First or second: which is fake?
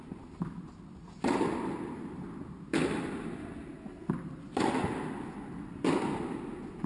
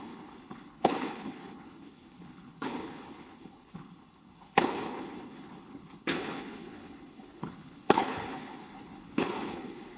second